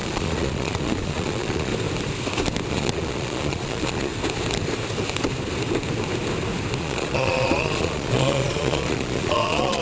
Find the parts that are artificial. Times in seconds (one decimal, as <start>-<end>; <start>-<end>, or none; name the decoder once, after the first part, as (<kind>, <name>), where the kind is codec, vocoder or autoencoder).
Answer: 0.0-1.7 (vocoder, Vocos); 2.7-4.1; 6.8-9.8